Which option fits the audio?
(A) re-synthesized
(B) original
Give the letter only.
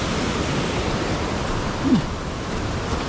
A